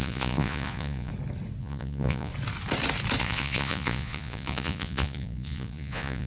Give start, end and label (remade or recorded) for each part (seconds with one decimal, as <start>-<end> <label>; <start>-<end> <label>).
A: 0.0-1.1 remade; 1.1-1.6 recorded; 1.6-2.3 remade; 2.3-3.2 recorded; 3.2-6.3 remade